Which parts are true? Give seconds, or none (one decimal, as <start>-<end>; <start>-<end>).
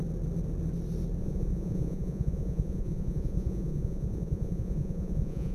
0.0-1.2